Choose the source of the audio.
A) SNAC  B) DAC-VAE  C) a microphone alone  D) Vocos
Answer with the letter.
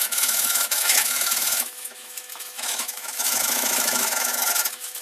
B